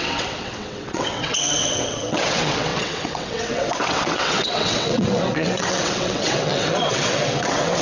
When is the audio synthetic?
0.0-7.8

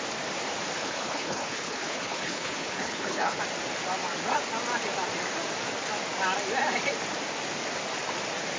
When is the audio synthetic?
0.8-3.4

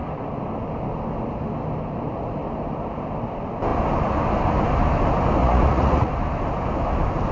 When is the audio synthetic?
5.4-6.1

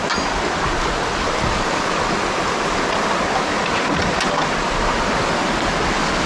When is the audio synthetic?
none

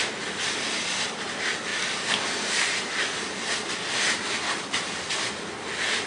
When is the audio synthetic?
none